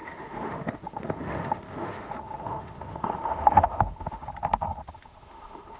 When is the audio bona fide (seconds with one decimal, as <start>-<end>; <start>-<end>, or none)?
4.3-4.9